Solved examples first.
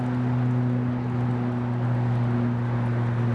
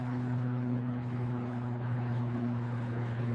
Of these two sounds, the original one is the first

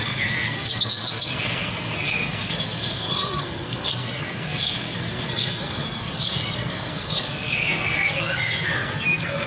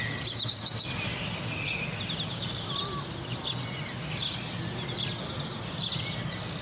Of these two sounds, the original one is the second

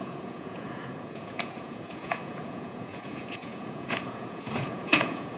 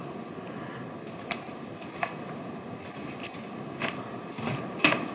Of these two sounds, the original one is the second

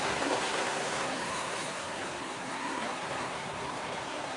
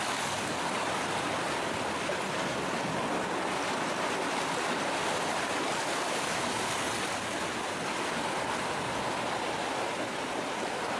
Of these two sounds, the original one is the second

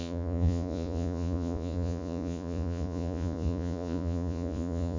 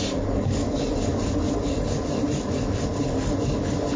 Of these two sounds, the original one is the second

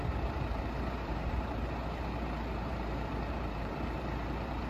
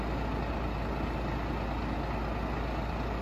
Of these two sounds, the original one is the second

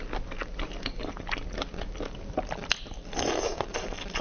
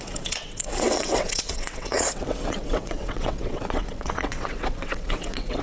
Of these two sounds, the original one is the first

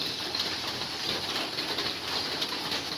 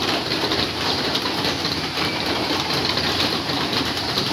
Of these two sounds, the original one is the first